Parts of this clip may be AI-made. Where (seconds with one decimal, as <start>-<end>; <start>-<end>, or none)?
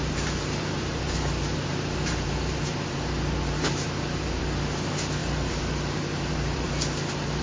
0.0-4.4; 5.2-6.7